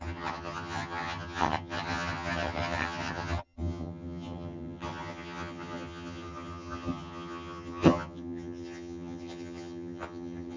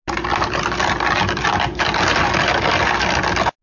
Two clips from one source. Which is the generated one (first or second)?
first